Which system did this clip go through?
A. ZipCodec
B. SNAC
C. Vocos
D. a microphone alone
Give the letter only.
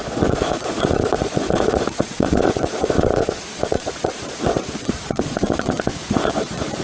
C